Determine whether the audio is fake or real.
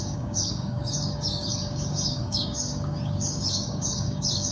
fake